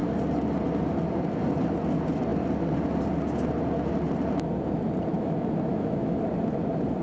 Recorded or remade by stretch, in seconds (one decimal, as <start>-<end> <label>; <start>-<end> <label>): 0.0-5.1 recorded; 5.1-6.2 remade; 6.2-7.0 recorded